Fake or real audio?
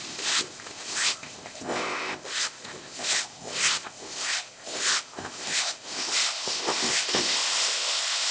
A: fake